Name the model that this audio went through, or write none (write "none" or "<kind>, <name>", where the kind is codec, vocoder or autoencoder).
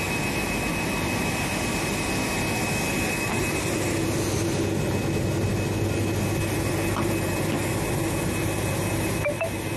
none